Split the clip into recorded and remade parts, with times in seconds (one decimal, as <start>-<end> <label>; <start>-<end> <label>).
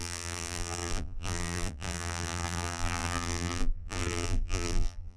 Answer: 0.0-5.2 remade